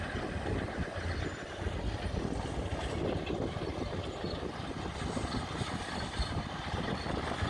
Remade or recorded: recorded